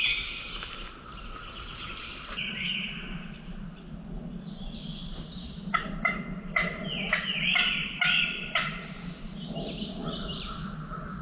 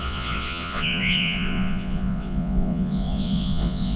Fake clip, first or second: second